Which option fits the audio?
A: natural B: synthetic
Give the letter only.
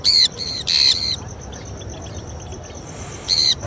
B